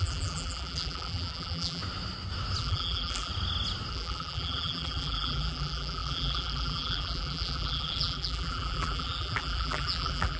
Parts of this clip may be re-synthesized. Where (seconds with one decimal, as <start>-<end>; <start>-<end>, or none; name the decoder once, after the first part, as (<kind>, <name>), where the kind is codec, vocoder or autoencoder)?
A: 0.0-1.8 (vocoder, BigVGAN v2); 2.6-3.3; 3.9-10.4